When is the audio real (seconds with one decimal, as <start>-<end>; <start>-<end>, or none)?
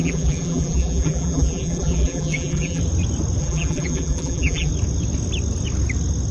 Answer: 2.8-3.4; 4.7-6.3